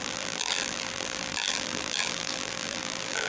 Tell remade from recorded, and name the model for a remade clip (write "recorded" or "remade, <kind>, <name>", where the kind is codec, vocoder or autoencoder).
remade, vocoder, BigVGAN v2